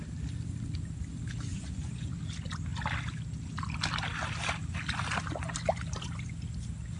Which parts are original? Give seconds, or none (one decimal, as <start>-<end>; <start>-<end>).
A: 0.0-1.5; 2.2-7.0